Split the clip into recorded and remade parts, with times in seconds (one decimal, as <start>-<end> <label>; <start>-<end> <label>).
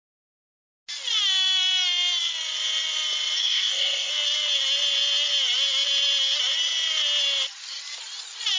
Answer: 0.0-3.4 recorded; 3.4-4.1 remade; 4.1-8.6 recorded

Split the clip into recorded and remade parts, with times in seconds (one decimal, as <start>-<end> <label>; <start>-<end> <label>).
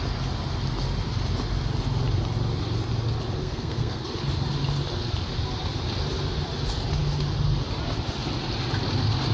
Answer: 0.0-3.4 recorded; 3.4-4.1 remade; 4.1-9.3 recorded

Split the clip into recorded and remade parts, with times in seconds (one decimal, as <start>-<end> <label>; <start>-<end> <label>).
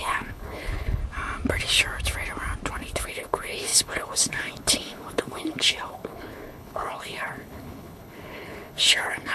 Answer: 0.0-1.0 remade; 1.0-2.7 recorded; 2.7-9.3 remade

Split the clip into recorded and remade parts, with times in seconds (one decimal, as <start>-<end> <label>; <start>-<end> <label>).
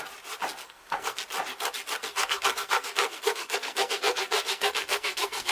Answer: 0.0-0.6 recorded; 0.6-1.2 remade; 1.2-2.0 recorded; 2.0-5.5 remade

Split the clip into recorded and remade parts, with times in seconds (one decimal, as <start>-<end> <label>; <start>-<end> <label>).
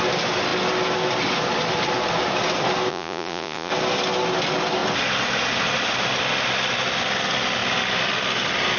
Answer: 0.0-2.9 recorded; 2.9-3.7 remade; 3.7-8.8 recorded